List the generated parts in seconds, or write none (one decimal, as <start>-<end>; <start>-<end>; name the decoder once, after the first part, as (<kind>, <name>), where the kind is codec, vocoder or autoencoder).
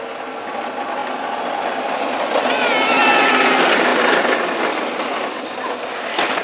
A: none